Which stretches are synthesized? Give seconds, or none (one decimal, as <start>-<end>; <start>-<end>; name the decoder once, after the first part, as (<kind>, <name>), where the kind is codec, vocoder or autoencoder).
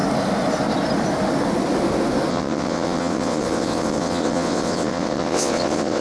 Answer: 2.3-6.0 (vocoder, WaveNeXt)